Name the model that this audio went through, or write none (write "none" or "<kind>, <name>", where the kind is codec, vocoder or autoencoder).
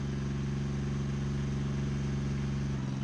none